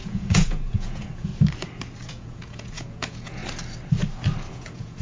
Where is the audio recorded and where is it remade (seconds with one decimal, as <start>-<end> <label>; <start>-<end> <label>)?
0.0-1.3 remade; 1.3-2.1 recorded; 2.1-3.4 remade; 3.4-4.5 recorded; 4.5-5.0 remade